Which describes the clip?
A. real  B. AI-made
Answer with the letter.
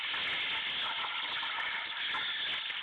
A